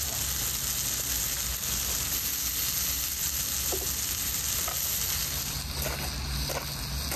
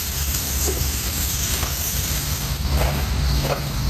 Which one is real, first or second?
first